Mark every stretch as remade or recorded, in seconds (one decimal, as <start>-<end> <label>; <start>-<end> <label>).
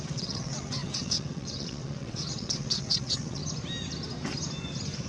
0.0-3.4 remade; 3.4-5.1 recorded